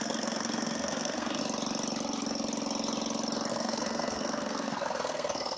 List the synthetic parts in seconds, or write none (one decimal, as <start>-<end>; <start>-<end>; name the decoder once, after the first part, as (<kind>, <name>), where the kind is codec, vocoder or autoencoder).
0.0-1.4 (codec, SNAC); 3.5-5.6